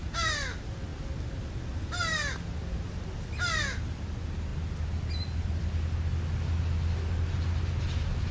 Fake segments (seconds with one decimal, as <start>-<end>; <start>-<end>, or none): none